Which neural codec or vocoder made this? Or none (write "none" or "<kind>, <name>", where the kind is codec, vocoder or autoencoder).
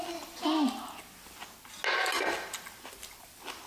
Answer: none